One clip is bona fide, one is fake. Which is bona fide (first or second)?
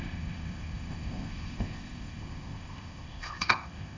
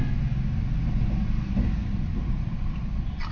second